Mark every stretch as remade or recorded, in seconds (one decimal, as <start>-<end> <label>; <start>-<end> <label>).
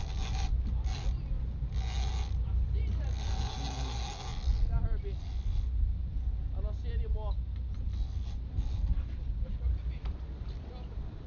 0.0-11.3 recorded